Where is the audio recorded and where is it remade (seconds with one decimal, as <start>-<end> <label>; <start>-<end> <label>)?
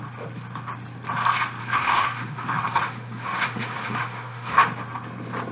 0.0-1.6 recorded; 1.6-4.6 remade; 4.6-5.5 recorded